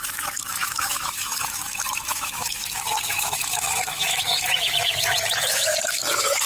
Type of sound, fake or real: fake